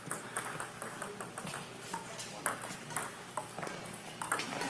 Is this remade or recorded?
recorded